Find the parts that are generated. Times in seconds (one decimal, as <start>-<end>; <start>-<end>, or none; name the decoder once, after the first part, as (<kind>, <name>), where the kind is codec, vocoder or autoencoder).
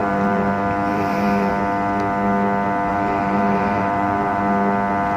0.0-0.5 (vocoder, BigVGAN v2); 0.9-1.5; 2.9-4.4